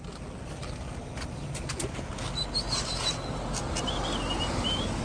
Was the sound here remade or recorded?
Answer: recorded